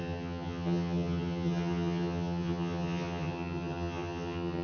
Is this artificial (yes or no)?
yes